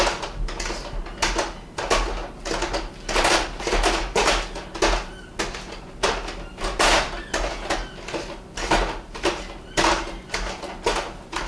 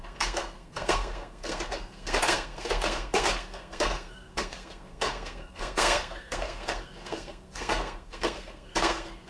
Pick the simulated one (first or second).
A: second